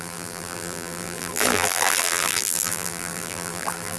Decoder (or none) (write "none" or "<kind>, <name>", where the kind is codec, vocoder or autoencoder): vocoder, BigVGAN v2